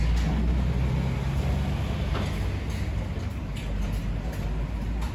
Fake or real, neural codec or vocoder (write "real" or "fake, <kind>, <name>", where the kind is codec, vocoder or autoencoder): real